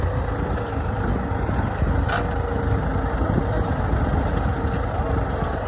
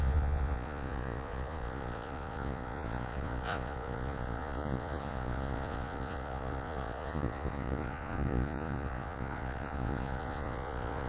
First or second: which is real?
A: first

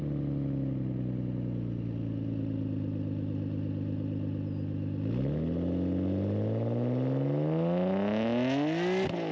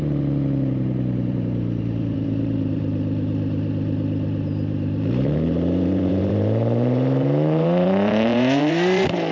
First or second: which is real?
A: first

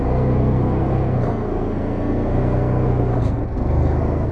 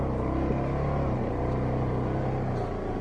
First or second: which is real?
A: second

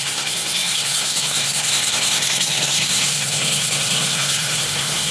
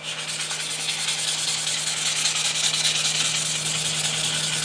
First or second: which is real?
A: second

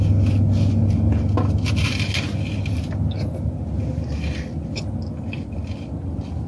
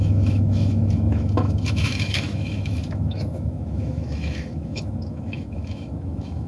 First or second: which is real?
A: first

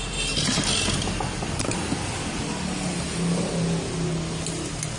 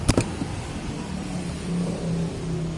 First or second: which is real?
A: first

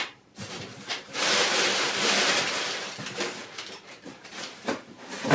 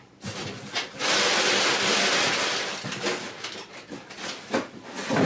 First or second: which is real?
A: second